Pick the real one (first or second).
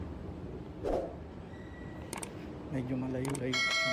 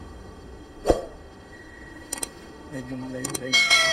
first